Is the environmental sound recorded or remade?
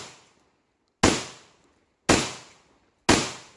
recorded